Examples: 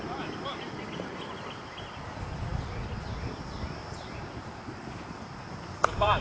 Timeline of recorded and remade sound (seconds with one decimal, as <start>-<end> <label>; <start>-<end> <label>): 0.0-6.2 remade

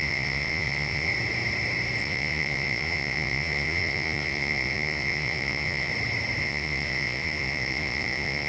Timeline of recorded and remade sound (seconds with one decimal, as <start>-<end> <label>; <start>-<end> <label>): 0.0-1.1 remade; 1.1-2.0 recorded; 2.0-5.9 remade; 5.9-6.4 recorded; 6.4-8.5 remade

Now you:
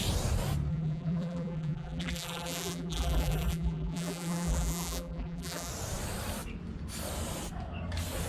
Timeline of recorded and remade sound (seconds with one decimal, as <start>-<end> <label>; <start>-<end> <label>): 0.0-0.7 recorded; 0.7-5.7 remade; 5.7-8.3 recorded